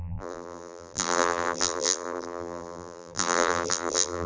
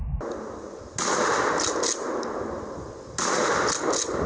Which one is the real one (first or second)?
second